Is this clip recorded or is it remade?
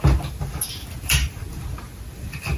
recorded